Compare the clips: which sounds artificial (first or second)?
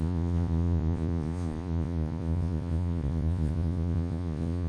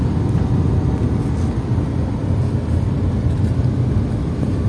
first